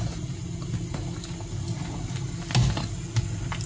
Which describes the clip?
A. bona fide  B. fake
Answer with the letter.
A